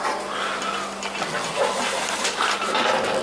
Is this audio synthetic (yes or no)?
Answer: no